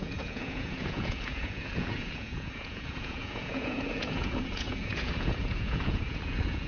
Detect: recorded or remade remade